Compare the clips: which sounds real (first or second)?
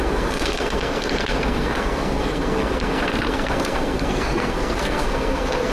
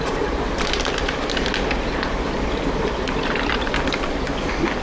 second